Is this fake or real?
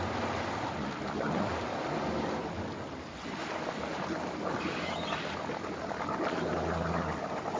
real